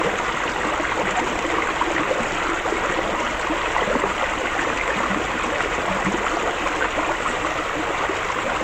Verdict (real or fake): real